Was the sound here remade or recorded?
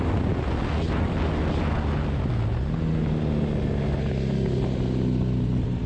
recorded